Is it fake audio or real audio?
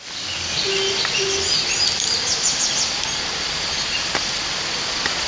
real